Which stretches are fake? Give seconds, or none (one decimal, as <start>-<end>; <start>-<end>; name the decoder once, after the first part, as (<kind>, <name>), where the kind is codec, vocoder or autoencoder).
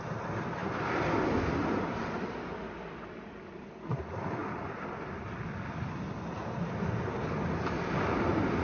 none